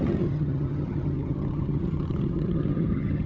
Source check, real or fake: fake